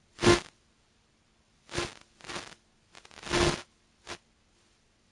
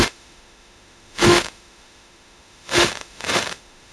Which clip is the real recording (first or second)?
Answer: first